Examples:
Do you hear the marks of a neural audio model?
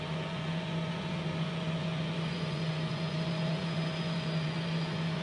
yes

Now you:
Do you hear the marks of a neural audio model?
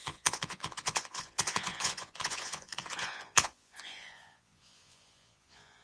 yes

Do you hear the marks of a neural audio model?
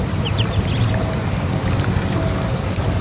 no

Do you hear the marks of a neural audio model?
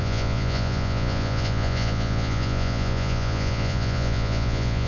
yes